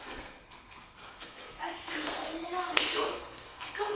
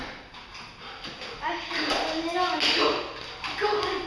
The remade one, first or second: first